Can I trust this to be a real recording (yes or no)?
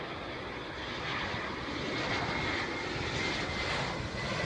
yes